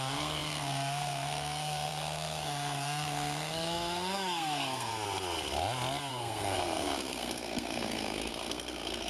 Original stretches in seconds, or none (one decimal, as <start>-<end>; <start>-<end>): 4.9-6.1